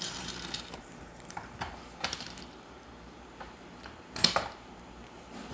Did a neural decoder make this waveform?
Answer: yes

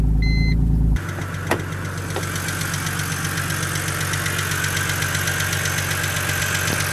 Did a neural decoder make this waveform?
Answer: no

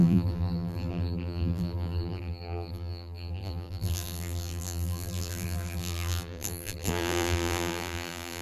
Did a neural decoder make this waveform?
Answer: yes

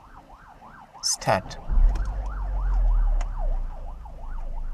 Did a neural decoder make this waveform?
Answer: no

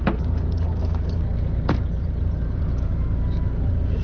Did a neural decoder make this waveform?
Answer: no